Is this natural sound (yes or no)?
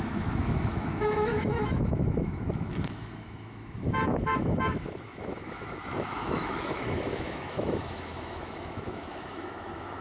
no